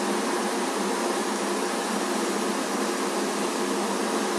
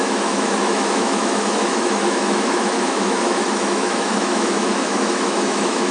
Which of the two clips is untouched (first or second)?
first